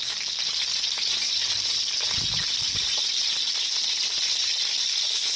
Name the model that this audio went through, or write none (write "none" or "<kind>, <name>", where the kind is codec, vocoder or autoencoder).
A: none